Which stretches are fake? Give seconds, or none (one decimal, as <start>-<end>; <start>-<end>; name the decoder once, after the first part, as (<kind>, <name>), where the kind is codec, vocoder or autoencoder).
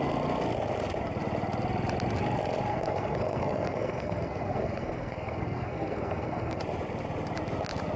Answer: 2.7-6.6 (codec, SNAC)